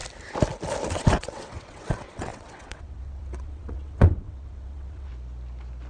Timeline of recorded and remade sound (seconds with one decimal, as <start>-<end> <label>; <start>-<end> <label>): 0.0-0.9 recorded; 0.9-5.1 remade; 5.1-5.9 recorded